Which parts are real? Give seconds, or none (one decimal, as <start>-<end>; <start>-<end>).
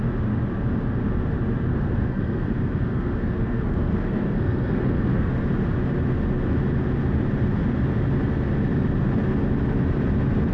0.0-1.7; 5.3-10.5